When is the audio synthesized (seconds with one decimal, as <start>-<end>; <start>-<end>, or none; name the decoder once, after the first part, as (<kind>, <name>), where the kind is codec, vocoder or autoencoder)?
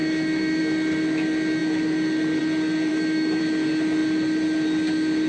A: 0.0-0.6 (autoencoder, DAC-VAE); 2.9-3.4